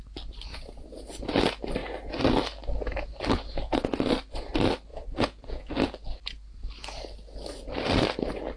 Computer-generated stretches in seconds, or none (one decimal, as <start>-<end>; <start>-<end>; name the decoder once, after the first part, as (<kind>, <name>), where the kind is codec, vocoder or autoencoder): 0.5-1.0 (vocoder, Vocos); 4.9-5.7